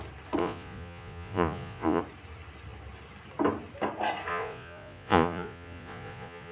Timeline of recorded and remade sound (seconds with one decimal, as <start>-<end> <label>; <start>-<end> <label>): 0.0-0.4 recorded; 0.4-2.0 remade; 2.0-4.3 recorded; 4.3-6.5 remade